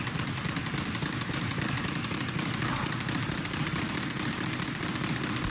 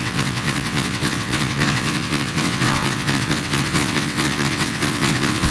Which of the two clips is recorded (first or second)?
first